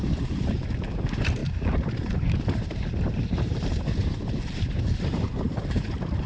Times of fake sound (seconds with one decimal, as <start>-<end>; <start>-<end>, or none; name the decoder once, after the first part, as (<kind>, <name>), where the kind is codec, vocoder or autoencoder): 0.0-6.3 (vocoder, BigVGAN v2)